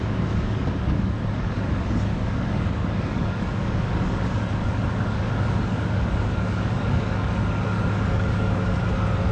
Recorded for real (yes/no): no